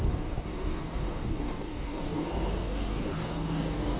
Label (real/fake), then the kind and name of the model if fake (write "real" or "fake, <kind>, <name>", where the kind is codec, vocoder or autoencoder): fake, codec, DAC